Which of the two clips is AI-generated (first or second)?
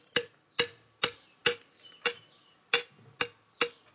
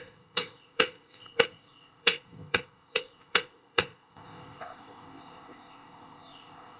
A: second